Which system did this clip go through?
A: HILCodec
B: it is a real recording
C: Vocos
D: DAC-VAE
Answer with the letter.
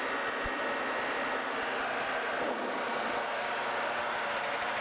B